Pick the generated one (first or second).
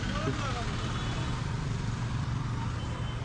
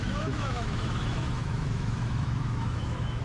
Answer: second